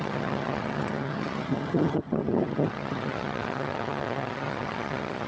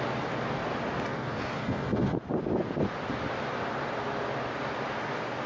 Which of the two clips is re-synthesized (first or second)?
first